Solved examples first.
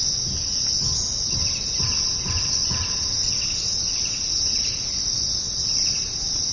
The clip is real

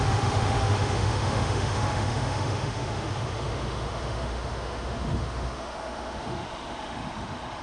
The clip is fake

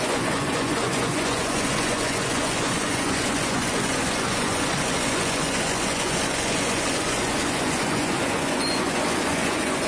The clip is fake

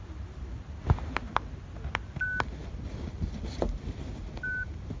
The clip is real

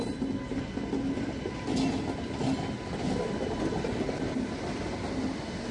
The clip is real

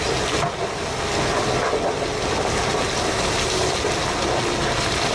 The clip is real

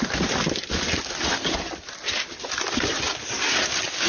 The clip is real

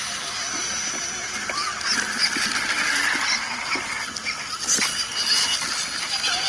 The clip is real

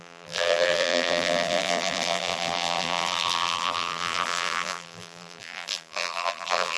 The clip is fake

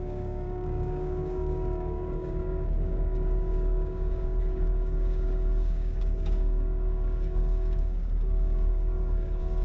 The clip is fake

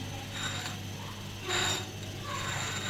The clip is real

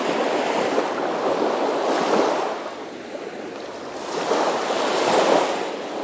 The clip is real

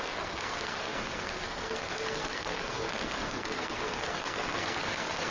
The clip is fake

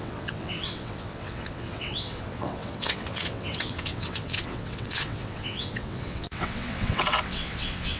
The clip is fake